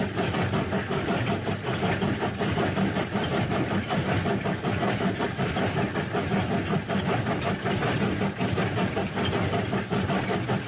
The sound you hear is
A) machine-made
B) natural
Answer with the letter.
B